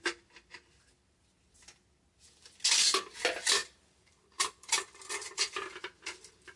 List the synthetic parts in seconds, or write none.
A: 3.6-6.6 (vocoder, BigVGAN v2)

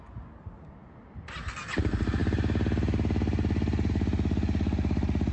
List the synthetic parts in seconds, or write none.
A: none

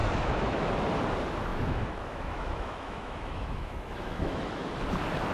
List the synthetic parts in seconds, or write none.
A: 0.0-0.7 (autoencoder, DAC-VAE); 1.5-4.7

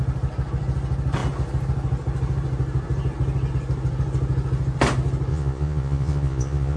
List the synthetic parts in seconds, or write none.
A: 5.3-6.8 (vocoder, Vocos)

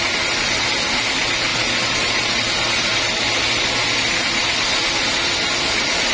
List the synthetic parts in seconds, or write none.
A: 1.5-2.3 (vocoder, BigVGAN v2)

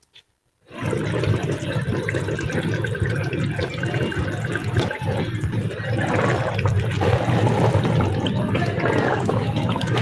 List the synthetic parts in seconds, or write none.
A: 9.1-10.0 (autoencoder, DAC-VAE)

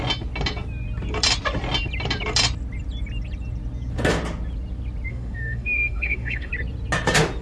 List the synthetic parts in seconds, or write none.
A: 5.1-6.5 (autoencoder, DAC-VAE)

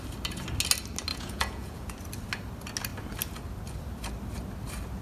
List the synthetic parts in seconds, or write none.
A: 1.1-1.9 (vocoder, Vocos)